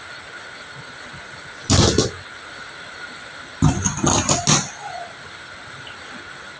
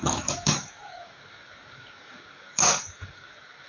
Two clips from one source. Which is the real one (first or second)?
first